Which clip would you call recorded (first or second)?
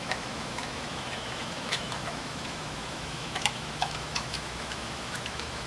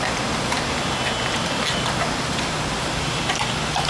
second